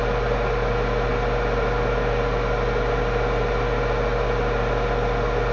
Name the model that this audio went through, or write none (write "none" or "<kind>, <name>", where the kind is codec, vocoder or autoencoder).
none